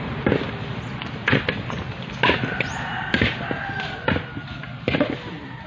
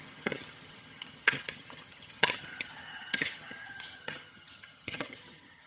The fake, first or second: second